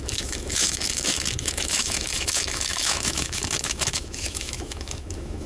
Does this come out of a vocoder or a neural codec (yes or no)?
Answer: yes